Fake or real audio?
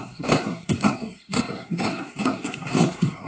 fake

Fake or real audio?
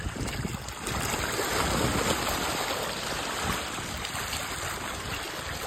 real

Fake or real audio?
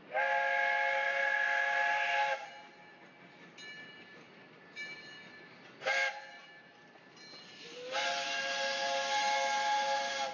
real